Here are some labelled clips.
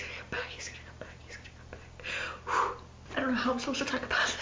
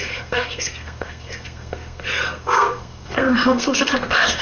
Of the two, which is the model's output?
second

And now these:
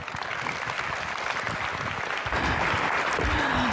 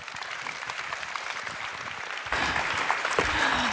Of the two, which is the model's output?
second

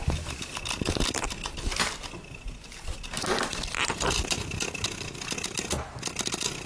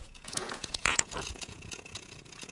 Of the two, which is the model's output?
second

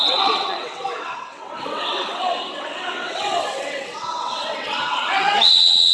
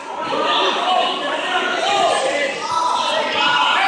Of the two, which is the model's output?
first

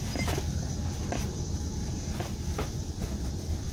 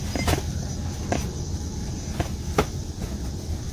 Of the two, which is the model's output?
first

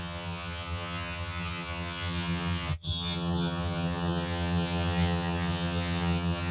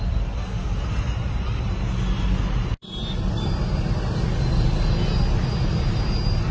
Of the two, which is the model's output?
first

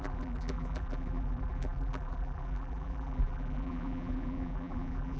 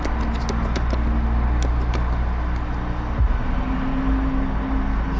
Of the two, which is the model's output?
first